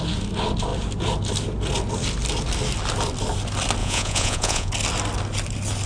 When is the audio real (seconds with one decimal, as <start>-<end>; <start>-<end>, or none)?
0.0-3.8; 4.7-5.9